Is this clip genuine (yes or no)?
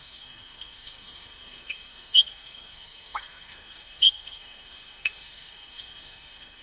no